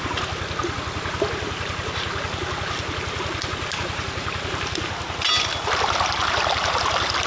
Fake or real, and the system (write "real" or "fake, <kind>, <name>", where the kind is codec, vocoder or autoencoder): real